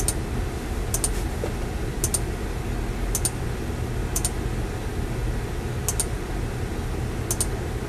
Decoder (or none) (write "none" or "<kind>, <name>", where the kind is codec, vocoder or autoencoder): none